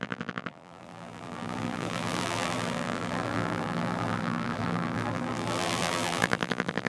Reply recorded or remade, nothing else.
remade